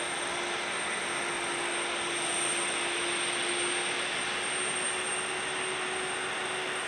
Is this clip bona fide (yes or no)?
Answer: yes